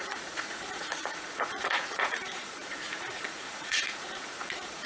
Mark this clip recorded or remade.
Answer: remade